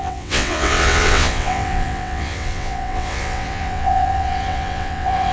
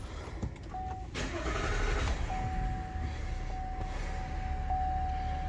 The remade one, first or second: first